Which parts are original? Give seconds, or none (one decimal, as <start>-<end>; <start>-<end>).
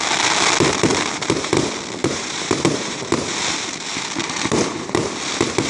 0.0-0.9; 1.5-2.0; 3.3-4.2; 5.0-5.7